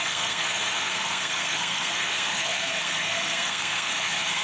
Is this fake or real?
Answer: fake